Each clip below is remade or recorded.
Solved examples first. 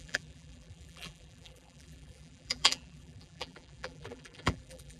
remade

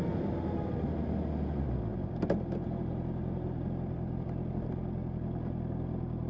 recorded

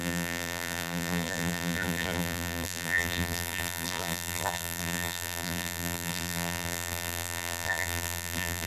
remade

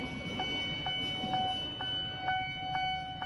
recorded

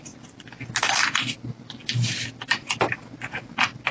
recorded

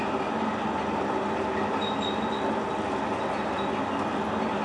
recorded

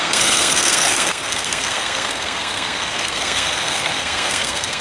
remade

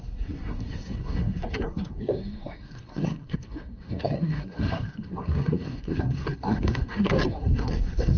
remade